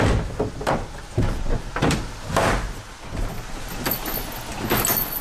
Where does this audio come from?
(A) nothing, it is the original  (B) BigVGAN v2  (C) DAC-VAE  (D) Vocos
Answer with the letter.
A